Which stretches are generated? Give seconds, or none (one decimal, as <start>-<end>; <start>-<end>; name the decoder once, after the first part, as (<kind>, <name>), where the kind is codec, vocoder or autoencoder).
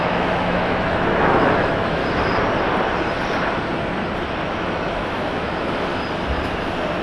0.0-2.0 (autoencoder, DAC-VAE); 4.5-5.9